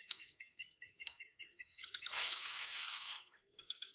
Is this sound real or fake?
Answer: fake